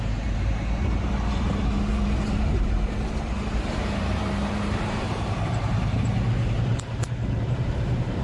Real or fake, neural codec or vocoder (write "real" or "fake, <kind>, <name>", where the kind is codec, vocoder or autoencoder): fake, vocoder, BigVGAN v2